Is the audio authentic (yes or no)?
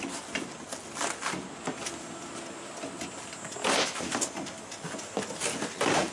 yes